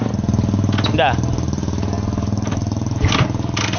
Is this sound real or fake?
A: real